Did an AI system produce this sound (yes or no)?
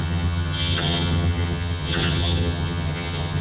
yes